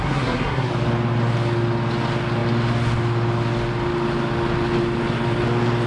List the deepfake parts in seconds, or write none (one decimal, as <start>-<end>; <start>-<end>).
0.0-0.7